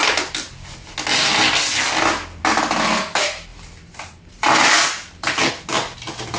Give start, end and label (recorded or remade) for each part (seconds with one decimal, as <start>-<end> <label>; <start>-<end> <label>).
0.0-3.5 recorded; 3.5-5.5 remade; 5.5-6.4 recorded